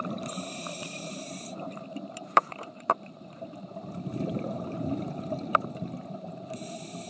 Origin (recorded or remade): remade